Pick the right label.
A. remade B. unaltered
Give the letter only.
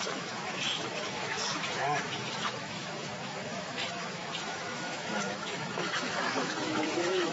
A